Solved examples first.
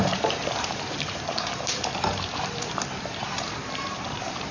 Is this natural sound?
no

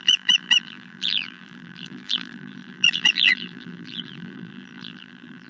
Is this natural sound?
no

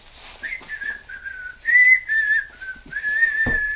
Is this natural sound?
yes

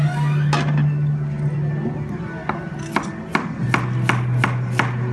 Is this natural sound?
yes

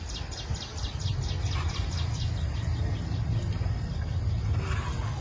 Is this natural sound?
yes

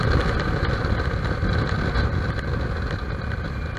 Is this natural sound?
yes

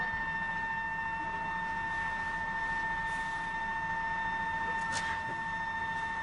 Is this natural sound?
yes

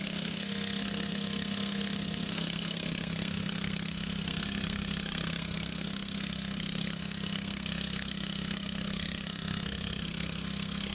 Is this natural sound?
no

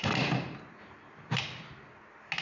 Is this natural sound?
yes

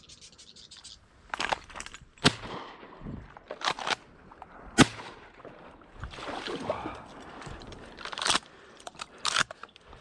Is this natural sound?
yes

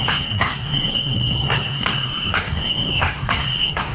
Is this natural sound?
no